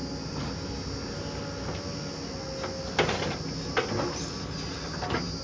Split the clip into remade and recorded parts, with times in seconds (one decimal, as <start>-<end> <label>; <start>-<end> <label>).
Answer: 0.0-5.4 recorded